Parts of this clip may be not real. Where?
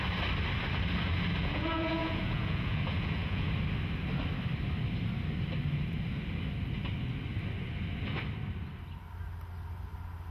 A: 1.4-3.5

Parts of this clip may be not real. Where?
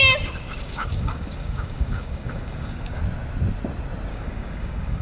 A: 0.0-3.0; 4.1-5.0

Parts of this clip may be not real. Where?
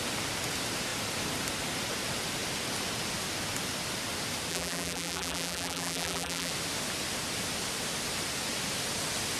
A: 4.5-6.5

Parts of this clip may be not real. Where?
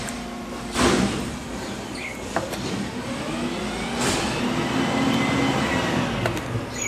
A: none